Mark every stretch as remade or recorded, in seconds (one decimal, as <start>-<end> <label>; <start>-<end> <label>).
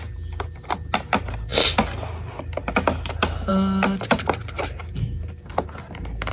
0.0-6.3 recorded